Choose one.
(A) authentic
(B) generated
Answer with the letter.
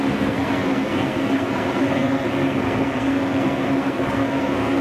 B